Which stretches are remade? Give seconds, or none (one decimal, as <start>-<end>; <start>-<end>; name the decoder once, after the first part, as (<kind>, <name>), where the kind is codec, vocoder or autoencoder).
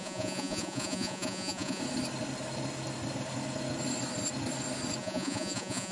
0.0-1.8 (vocoder, Vocos); 5.0-5.9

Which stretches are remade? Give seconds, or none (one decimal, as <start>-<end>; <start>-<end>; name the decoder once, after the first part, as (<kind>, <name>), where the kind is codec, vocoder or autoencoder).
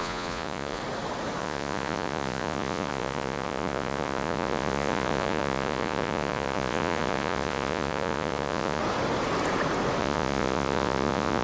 0.0-0.8 (vocoder, Vocos); 1.4-8.8; 10.0-11.4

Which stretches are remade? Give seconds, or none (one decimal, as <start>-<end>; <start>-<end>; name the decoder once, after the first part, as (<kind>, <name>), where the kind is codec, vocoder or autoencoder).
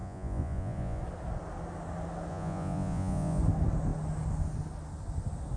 0.0-1.0 (vocoder, Vocos); 2.3-3.4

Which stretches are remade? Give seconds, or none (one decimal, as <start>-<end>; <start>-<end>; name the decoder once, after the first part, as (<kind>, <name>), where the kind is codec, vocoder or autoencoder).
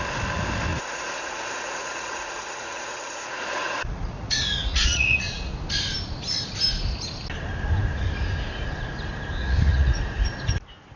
0.7-5.5 (vocoder, Vocos); 9.4-10.0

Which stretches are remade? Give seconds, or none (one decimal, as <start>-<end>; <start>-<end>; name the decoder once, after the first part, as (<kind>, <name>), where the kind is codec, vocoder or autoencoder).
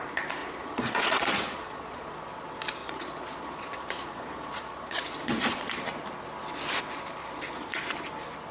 0.4-2.1 (vocoder, Vocos); 2.8-5.8; 7.2-7.8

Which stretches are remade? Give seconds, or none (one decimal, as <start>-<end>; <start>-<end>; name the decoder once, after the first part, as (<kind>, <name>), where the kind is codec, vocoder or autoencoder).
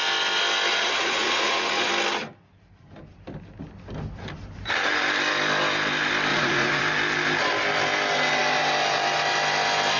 0.7-1.9 (vocoder, Vocos); 6.3-6.8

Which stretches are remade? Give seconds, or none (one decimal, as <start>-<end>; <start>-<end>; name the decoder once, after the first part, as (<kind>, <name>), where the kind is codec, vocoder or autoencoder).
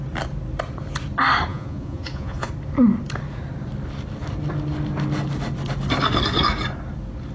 1.5-2.5 (vocoder, Vocos)